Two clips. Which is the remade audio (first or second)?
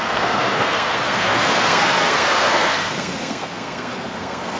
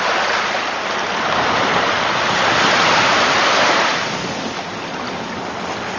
first